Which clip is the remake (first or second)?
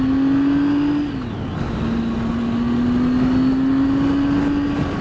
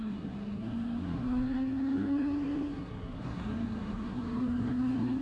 second